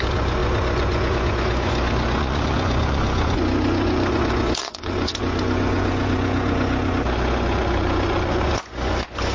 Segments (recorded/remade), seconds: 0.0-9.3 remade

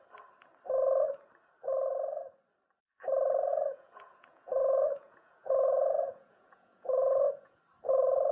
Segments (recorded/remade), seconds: 0.0-3.5 recorded; 3.5-7.6 remade; 7.6-8.3 recorded

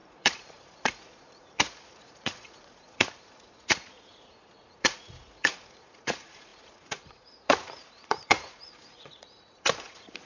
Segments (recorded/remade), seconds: 0.0-10.3 remade

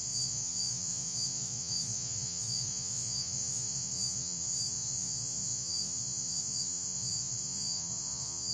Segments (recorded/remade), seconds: 0.0-8.5 remade

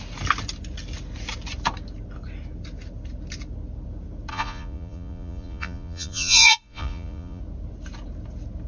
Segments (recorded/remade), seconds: 0.0-4.3 recorded; 4.3-7.4 remade; 7.4-8.7 recorded

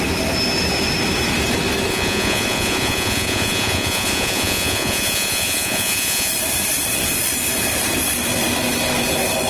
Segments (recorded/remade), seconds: 0.0-1.9 recorded; 1.9-6.3 remade; 6.3-9.5 recorded

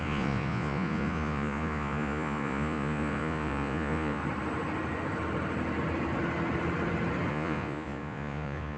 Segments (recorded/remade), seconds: 0.0-4.2 remade; 4.2-7.3 recorded; 7.3-8.8 remade

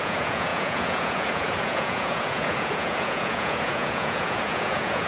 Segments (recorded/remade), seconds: 0.0-5.1 remade